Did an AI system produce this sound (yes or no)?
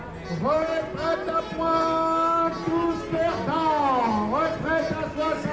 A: no